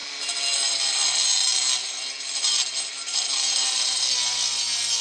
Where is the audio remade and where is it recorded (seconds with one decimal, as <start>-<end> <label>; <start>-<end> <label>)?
0.0-5.0 recorded